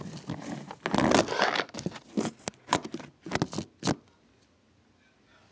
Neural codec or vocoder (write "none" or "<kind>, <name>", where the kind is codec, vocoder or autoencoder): none